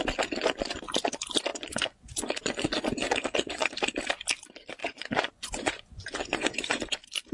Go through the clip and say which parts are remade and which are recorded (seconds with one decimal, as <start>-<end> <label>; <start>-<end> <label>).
0.0-1.5 recorded; 1.5-3.7 remade; 3.7-4.8 recorded; 4.8-6.8 remade; 6.8-7.3 recorded